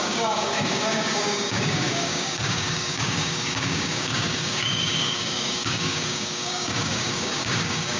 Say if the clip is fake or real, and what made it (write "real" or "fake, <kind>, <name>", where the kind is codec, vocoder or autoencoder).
fake, codec, DAC